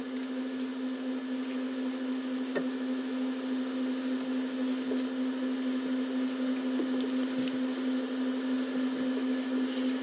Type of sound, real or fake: real